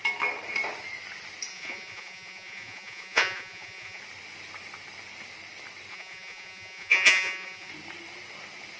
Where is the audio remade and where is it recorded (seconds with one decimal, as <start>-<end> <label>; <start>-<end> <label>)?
0.0-1.5 recorded; 1.5-4.0 remade; 4.0-5.9 recorded; 5.9-7.7 remade; 7.7-8.8 recorded